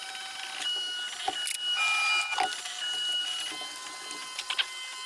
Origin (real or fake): real